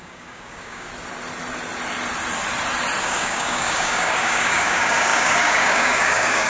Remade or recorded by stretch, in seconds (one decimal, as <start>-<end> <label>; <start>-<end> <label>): 0.0-0.9 remade; 0.9-3.0 recorded; 3.0-6.5 remade